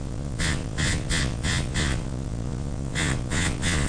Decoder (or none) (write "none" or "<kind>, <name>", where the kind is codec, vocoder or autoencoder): vocoder, Vocos